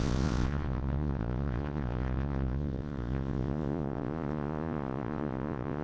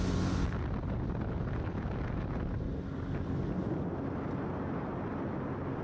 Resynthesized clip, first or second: first